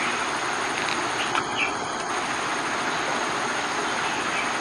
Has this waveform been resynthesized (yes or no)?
no